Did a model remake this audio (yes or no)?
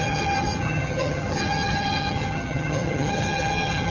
yes